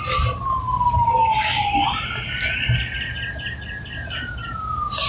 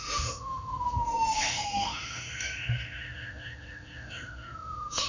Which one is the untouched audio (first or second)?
first